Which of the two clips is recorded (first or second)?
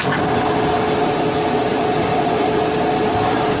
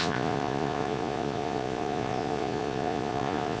first